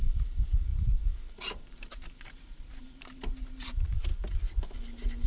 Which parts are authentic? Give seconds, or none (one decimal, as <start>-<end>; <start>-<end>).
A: 4.1-5.3